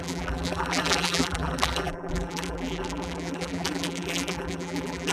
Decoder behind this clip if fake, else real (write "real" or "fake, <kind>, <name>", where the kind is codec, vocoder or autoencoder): fake, vocoder, BigVGAN v2